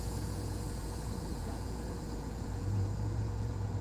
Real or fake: fake